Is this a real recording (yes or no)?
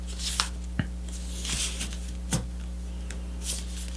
yes